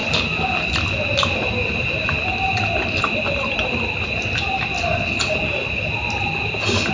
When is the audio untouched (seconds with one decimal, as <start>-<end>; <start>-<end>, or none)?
0.0-6.9